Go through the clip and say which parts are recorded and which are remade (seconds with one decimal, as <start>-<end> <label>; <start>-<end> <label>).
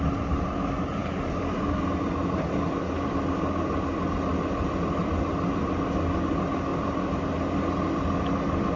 0.0-1.0 recorded; 1.0-3.3 remade; 3.3-8.8 recorded